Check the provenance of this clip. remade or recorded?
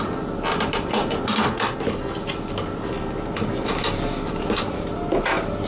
recorded